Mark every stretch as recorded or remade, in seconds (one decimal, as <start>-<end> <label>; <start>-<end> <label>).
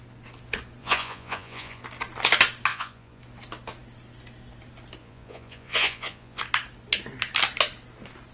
0.0-0.8 recorded; 0.8-1.8 remade; 1.8-2.7 recorded; 2.7-3.2 remade; 3.2-5.0 recorded; 5.0-6.4 remade; 6.4-8.3 recorded